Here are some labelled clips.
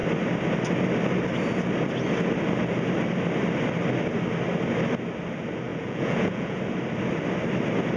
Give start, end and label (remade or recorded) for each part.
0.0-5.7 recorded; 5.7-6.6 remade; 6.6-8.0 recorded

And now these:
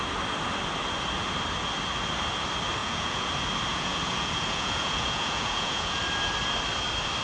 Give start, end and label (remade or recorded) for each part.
0.0-2.8 recorded; 2.8-3.3 remade; 3.3-3.7 recorded; 3.7-6.0 remade; 6.0-7.2 recorded

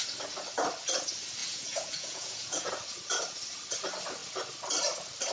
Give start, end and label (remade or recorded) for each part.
0.0-1.4 recorded; 1.4-2.7 remade; 2.7-5.3 recorded

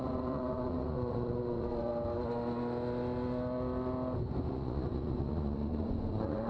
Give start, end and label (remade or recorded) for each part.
0.0-1.9 remade; 1.9-4.5 recorded; 4.5-6.5 remade

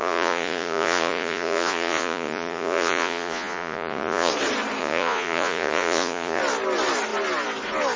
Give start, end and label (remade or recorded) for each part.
0.0-4.3 remade; 4.3-4.8 recorded; 4.8-6.4 remade; 6.4-8.0 recorded

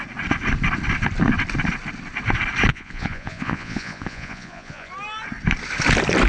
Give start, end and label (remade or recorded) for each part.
0.0-2.7 recorded; 2.7-4.9 remade; 4.9-6.3 recorded

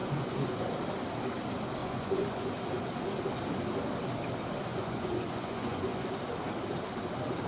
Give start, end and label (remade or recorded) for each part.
0.0-0.7 remade; 0.7-1.8 recorded; 1.8-2.5 remade; 2.5-4.7 recorded; 4.7-6.1 remade; 6.1-7.5 recorded

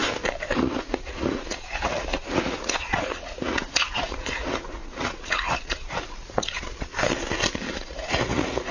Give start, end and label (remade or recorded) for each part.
0.0-0.6 recorded; 0.6-6.9 remade; 6.9-7.7 recorded; 7.7-8.7 remade